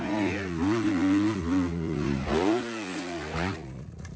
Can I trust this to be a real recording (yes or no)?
no